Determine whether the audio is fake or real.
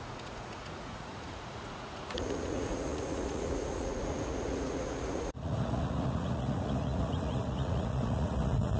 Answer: fake